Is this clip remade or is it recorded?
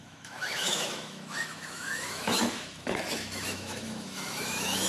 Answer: remade